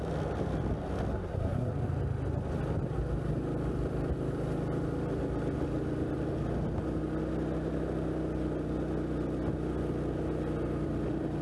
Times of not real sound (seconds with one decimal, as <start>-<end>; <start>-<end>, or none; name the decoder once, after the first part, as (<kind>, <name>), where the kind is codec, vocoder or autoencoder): 1.1-1.7 (codec, SNAC)